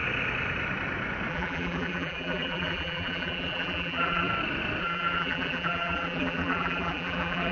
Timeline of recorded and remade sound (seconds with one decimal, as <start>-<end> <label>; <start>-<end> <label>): 0.0-1.3 recorded; 1.3-4.3 remade; 4.3-4.8 recorded; 4.8-7.5 remade